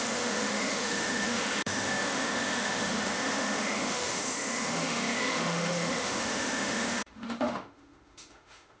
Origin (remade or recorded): remade